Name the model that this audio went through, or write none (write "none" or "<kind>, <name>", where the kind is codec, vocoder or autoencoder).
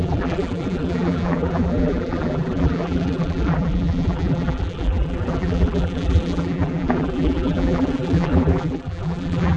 vocoder, BigVGAN v2